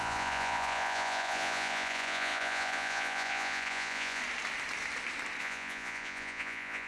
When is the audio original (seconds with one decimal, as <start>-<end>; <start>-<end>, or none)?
4.2-5.4